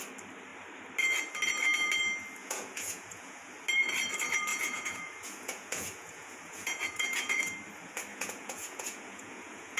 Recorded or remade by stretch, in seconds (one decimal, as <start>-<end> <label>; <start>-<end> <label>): 0.0-2.4 recorded; 2.4-3.5 remade; 3.5-4.5 recorded; 4.5-7.4 remade; 7.4-8.1 recorded; 8.1-9.8 remade